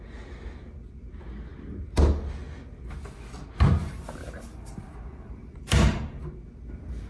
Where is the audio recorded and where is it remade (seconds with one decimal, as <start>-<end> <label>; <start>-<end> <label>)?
0.0-3.8 recorded; 3.8-6.2 remade; 6.2-7.1 recorded